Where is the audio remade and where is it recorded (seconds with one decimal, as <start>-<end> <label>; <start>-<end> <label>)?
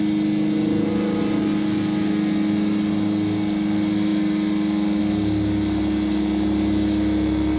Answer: 0.0-7.6 recorded